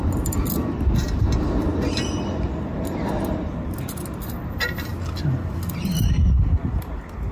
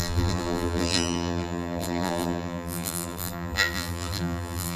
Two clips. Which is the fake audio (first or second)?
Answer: second